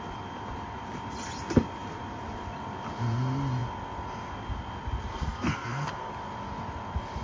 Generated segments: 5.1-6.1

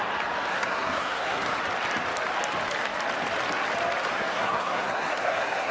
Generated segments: 0.5-1.6; 4.1-5.7

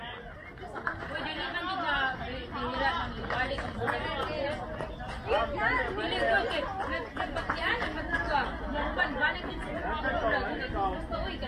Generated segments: none

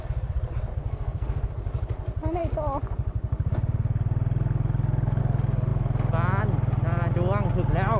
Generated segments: 0.8-1.5

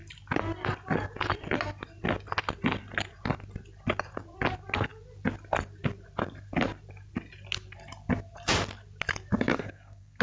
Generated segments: 9.5-10.2

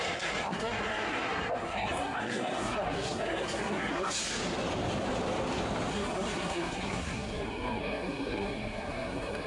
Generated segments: 0.0-4.2; 5.9-9.5

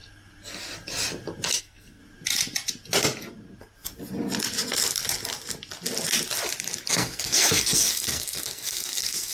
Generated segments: 1.6-2.0; 6.9-9.3